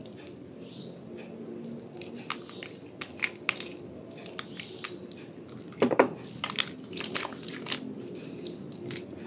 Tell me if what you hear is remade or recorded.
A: recorded